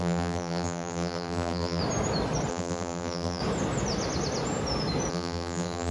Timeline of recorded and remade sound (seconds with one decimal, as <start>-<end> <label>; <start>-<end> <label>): 0.0-1.8 remade; 1.8-2.5 recorded; 2.5-3.4 remade; 3.4-5.1 recorded; 5.1-5.9 remade